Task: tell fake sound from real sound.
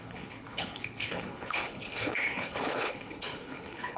fake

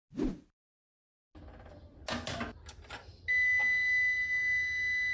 real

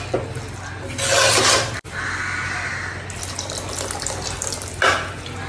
real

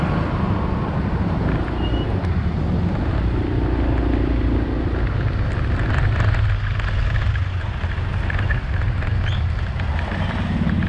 real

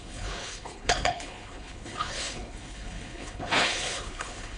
fake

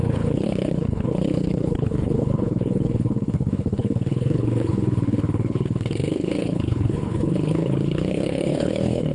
fake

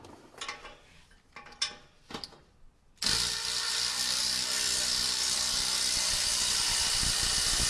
real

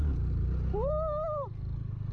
real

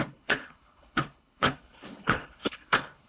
fake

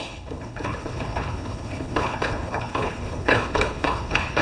fake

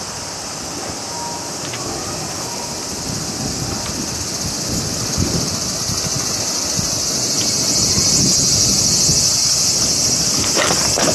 real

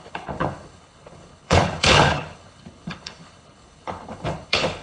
fake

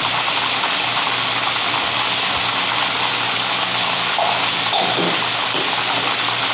real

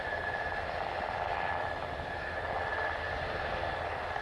real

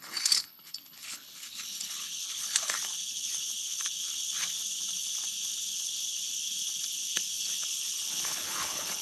fake